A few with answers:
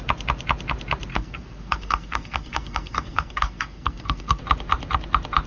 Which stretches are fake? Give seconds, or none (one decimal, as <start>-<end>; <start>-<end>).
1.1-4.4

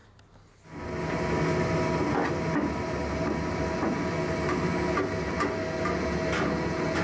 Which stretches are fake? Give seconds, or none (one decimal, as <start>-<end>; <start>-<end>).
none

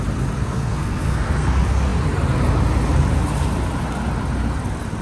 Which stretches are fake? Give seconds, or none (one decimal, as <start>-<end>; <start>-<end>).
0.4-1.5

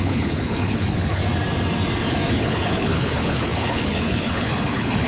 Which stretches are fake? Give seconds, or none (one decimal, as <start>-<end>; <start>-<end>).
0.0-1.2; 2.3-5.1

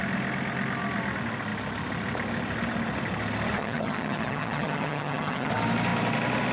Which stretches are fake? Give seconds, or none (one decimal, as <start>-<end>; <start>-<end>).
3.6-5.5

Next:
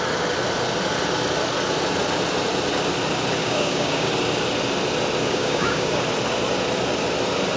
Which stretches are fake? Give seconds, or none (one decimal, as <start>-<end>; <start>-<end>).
3.4-4.1; 5.2-6.0

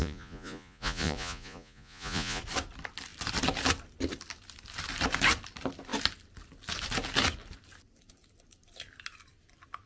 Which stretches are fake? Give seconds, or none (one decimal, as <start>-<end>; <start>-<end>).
0.0-2.4